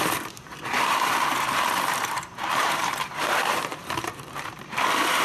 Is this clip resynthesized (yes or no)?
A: yes